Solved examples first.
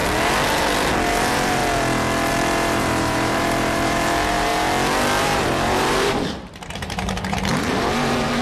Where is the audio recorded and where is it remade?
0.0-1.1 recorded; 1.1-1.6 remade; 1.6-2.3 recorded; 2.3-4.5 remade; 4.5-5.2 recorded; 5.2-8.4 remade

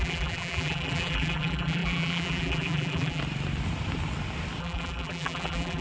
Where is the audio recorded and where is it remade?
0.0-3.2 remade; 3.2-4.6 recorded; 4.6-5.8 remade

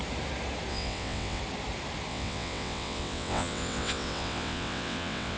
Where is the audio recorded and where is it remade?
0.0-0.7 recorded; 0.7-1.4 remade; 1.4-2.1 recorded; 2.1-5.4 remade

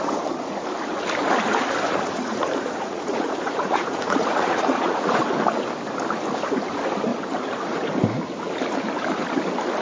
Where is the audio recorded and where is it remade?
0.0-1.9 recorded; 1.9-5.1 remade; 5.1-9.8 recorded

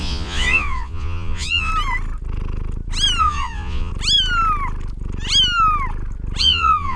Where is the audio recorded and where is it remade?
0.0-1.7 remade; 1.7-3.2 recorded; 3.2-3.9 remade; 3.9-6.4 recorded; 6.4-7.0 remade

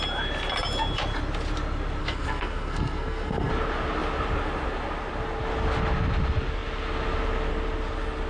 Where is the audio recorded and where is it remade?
0.0-2.0 recorded; 2.0-3.5 remade; 3.5-8.3 recorded

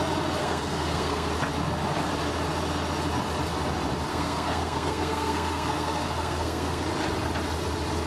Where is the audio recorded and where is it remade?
0.0-0.4 recorded; 0.4-1.3 remade; 1.3-4.1 recorded; 4.1-6.8 remade; 6.8-8.1 recorded